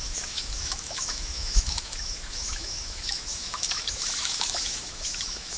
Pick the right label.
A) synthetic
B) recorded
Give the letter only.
A